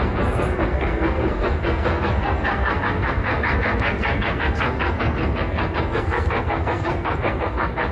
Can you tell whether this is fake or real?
fake